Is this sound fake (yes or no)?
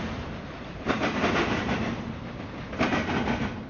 no